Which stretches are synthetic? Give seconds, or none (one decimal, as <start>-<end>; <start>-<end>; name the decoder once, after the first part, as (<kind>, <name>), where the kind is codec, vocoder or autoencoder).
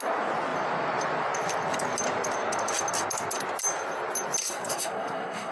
4.4-5.5 (codec, SNAC)